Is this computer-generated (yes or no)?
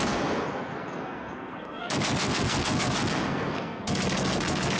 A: yes